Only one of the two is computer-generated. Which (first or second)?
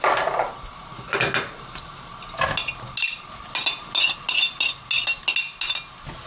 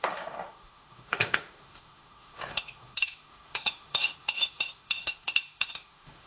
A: second